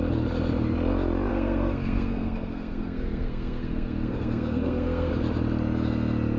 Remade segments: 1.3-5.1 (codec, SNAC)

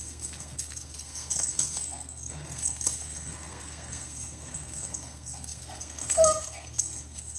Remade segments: 0.0-7.4 (codec, SNAC)

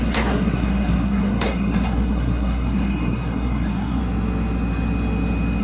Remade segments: 0.0-4.0 (codec, SNAC)